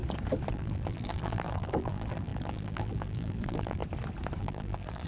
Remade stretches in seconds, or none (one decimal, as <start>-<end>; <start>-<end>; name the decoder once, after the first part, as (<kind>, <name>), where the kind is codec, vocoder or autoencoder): 0.5-3.8 (vocoder, BigVGAN v2); 4.4-5.1